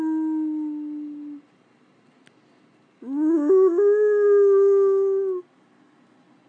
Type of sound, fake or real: real